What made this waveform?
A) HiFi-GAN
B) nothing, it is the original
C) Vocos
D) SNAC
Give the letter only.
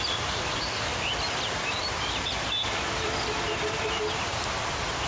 B